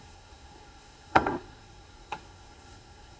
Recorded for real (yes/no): no